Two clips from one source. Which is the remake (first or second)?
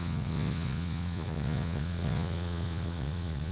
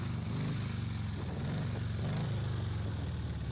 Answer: first